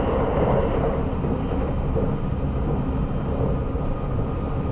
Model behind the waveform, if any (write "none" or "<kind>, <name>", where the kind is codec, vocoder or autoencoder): none